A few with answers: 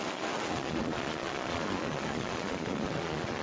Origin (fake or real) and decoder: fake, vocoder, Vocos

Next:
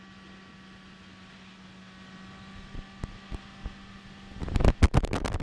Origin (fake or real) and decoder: real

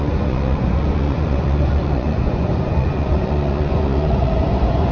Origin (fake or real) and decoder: fake, vocoder, Vocos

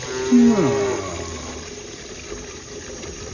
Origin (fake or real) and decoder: real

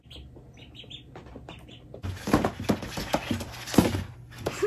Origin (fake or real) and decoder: real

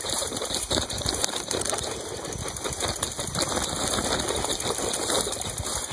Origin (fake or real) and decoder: real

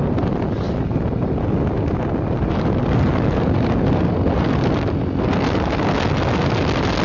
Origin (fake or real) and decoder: real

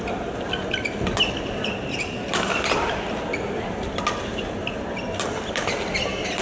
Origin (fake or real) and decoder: real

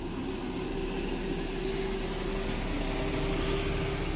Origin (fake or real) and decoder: real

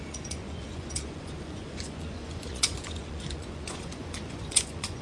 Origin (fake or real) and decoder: fake, vocoder, Vocos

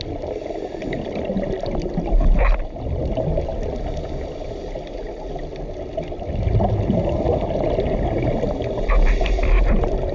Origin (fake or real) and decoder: real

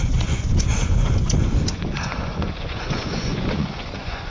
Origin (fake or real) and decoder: fake, vocoder, Vocos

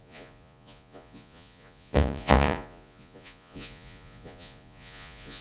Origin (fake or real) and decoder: fake, vocoder, Vocos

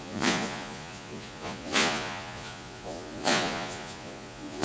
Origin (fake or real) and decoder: fake, vocoder, Vocos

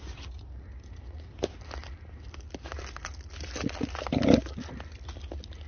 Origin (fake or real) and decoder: real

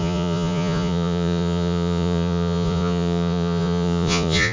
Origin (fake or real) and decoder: fake, vocoder, Vocos